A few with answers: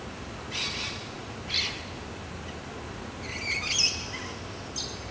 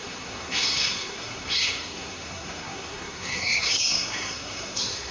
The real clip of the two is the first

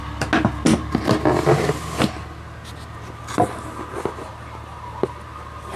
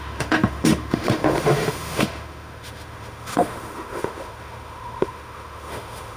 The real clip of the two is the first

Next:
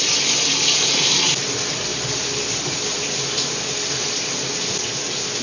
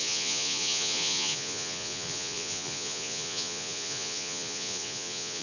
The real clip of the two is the first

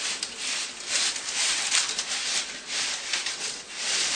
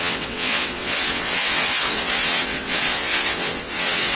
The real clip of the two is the first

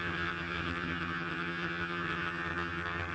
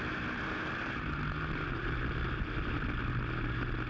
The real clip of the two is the second